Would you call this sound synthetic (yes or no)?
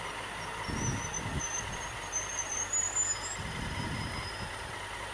no